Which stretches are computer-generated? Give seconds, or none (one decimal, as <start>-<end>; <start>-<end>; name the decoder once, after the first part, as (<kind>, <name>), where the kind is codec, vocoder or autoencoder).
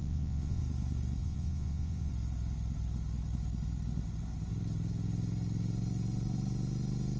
0.0-0.6 (vocoder, Vocos); 1.2-2.1